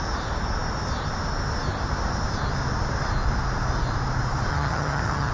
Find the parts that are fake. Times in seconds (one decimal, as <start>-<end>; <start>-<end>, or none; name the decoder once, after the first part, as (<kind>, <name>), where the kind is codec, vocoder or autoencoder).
4.5-5.3 (vocoder, HiFi-GAN)